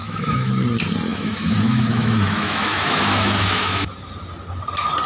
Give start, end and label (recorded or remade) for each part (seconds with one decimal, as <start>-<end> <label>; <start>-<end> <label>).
0.0-0.5 remade; 0.5-1.1 recorded; 1.1-3.9 remade; 3.9-5.1 recorded